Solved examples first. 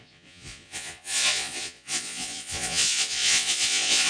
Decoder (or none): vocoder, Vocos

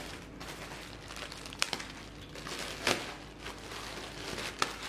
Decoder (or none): none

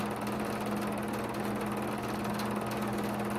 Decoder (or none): none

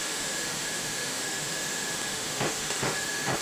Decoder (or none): autoencoder, DAC-VAE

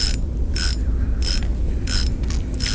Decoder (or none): none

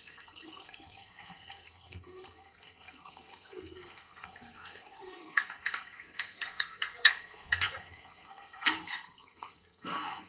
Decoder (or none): codec, SNAC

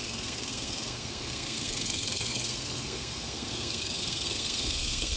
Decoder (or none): codec, SNAC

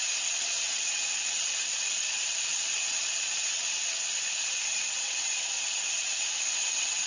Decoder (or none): vocoder, WaveNeXt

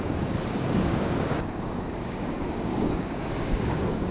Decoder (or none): codec, DAC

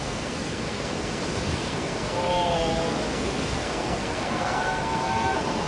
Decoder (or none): codec, SNAC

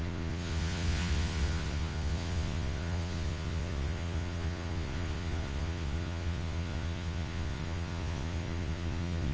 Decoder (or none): vocoder, Vocos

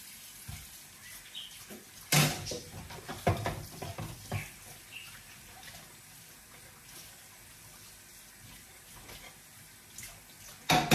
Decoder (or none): none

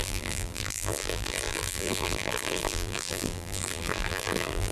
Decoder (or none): vocoder, BigVGAN v2